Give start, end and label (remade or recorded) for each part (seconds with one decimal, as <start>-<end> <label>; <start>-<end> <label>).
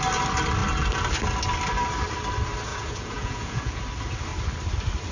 0.0-2.7 recorded; 2.7-3.8 remade; 3.8-5.1 recorded